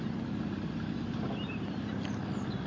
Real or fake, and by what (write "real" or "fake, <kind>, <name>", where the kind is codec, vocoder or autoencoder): real